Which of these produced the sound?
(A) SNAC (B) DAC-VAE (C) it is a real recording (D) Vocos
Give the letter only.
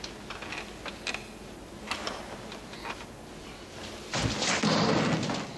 C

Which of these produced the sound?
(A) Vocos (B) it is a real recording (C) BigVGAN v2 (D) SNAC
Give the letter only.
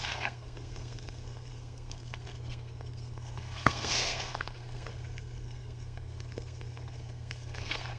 D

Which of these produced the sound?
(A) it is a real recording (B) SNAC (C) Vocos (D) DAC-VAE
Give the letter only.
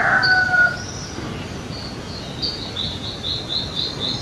A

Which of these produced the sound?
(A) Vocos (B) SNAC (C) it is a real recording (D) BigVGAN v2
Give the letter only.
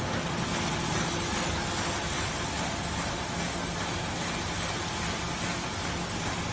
C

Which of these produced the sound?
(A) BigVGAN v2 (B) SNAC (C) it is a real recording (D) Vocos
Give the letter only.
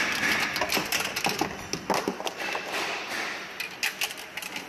C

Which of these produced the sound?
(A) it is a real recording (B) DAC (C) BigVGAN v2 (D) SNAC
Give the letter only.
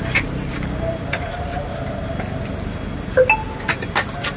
A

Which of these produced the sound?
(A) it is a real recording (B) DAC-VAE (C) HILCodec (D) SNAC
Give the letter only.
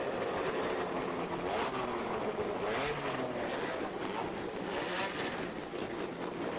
A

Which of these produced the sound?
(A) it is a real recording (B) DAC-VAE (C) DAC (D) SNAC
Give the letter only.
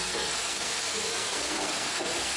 D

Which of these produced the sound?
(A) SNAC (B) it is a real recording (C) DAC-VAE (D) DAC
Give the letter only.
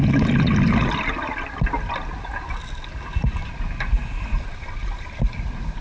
B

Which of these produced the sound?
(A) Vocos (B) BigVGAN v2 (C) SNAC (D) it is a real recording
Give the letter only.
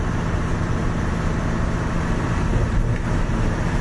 D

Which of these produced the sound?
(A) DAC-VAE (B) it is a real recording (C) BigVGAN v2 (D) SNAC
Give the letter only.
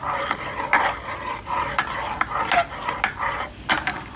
B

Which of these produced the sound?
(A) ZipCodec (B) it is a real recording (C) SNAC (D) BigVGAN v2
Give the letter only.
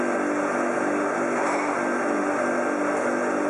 B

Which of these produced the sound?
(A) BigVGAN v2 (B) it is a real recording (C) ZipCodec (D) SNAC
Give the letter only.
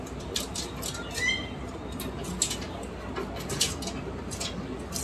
B